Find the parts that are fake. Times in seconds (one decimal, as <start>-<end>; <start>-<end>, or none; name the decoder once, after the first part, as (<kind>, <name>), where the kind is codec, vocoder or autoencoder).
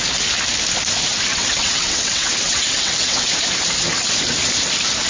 1.3-3.3 (vocoder, WaveNeXt)